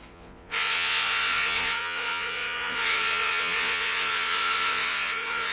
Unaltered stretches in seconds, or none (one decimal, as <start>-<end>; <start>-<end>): none